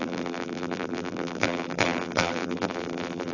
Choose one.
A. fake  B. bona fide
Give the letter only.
A